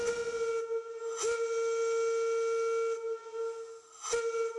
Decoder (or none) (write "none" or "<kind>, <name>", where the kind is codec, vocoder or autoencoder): none